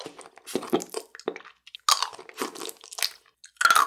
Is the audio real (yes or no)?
yes